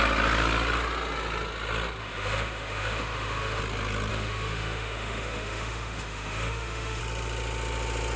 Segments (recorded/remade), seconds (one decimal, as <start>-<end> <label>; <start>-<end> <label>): 0.0-2.0 recorded; 2.0-3.6 remade; 3.6-4.1 recorded; 4.1-7.0 remade; 7.0-8.2 recorded